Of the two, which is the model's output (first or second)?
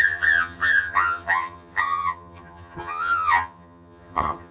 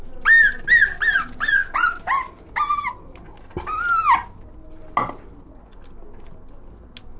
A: first